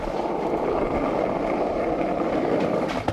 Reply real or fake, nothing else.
fake